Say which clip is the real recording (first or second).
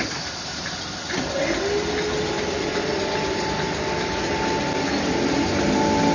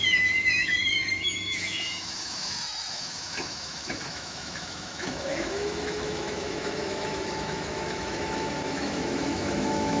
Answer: first